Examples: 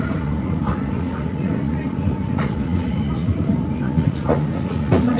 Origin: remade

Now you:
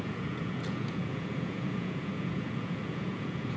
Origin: remade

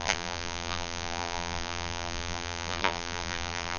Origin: remade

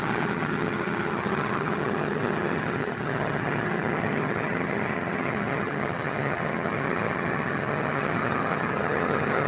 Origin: remade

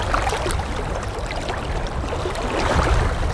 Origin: recorded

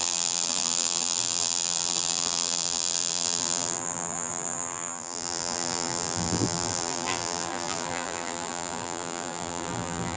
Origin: remade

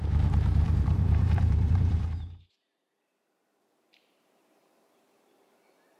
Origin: remade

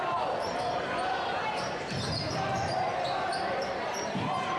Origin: remade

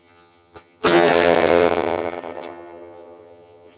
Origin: remade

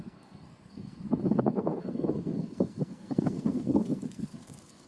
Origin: remade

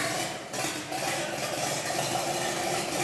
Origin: recorded